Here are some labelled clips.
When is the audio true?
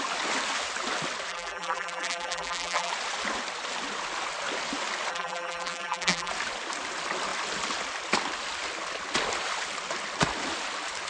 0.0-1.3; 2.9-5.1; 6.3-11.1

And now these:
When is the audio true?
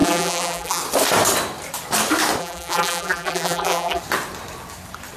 0.8-2.4; 4.0-5.2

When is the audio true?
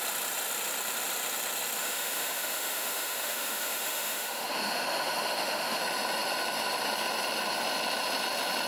0.0-1.8; 5.8-8.7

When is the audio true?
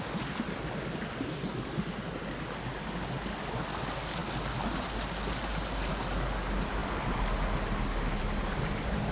0.0-9.1